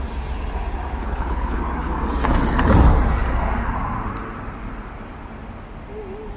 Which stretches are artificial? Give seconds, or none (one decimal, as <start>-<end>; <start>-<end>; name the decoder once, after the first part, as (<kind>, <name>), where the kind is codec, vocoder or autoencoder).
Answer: 1.0-1.6 (codec, HILCodec)

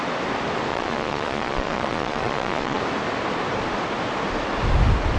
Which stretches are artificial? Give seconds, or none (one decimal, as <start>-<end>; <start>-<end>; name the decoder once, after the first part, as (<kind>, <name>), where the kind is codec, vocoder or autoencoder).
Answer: 0.7-2.8 (vocoder, Vocos)

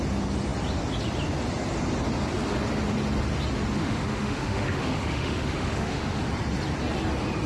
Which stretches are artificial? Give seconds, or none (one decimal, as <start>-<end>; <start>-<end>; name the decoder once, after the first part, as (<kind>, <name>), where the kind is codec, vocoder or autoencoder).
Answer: 3.8-6.2 (autoencoder, DAC-VAE)

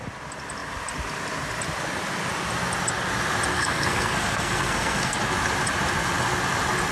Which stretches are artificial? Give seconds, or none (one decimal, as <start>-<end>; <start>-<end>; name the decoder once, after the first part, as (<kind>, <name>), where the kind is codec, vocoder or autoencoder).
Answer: 3.5-5.2 (codec, SNAC)

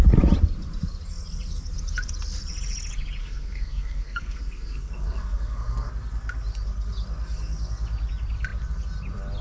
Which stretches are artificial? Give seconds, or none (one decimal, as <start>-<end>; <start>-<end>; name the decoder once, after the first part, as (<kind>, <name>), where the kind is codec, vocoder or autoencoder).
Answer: 3.2-5.9 (codec, SNAC)

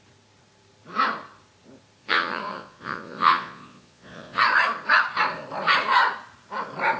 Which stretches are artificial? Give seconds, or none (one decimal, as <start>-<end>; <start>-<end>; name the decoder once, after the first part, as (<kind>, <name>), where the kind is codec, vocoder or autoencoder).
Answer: 2.0-4.4 (vocoder, Vocos)

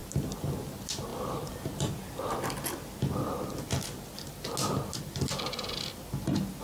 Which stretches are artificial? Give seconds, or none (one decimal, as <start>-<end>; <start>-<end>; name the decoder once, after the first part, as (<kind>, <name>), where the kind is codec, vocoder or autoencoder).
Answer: none

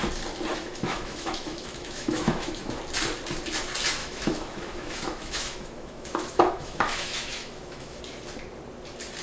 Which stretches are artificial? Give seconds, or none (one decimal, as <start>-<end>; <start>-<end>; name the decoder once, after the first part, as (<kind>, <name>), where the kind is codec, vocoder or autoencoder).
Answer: 0.5-2.8 (autoencoder, DAC-VAE); 4.0-8.0